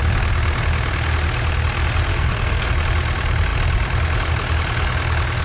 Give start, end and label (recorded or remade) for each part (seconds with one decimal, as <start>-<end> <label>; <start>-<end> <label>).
0.0-2.1 recorded; 2.1-2.7 remade; 2.7-5.4 recorded